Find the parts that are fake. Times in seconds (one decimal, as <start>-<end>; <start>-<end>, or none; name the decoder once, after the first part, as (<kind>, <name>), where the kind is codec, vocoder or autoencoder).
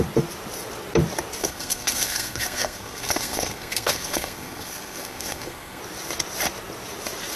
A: 1.4-5.8 (codec, SNAC)